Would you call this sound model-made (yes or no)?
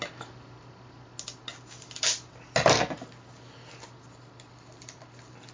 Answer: no